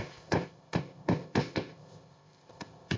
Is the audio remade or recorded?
remade